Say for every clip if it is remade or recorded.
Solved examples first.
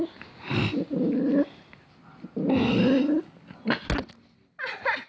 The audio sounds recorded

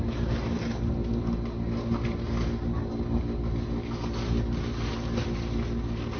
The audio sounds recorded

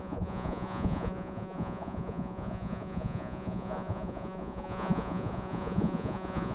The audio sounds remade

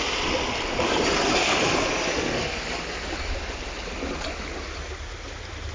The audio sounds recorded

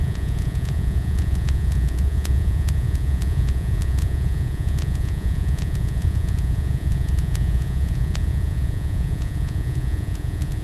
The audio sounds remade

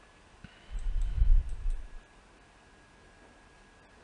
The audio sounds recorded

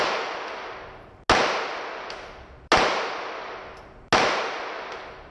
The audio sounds recorded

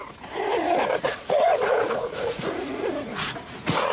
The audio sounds remade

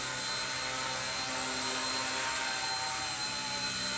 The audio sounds recorded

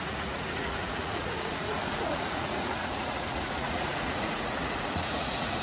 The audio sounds remade